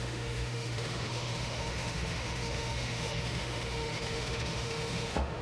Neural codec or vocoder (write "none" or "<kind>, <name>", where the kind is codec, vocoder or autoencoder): autoencoder, DAC-VAE